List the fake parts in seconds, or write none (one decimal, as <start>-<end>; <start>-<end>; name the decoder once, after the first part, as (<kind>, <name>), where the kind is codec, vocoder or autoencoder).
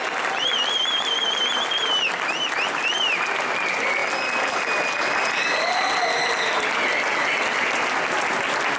none